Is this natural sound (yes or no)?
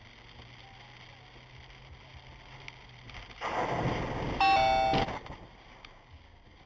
yes